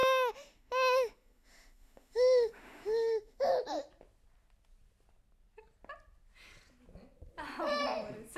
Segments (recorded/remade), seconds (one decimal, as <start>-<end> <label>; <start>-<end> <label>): 0.0-3.5 remade; 3.5-8.4 recorded